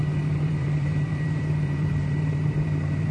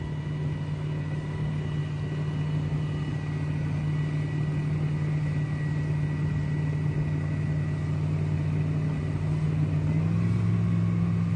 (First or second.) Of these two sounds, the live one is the second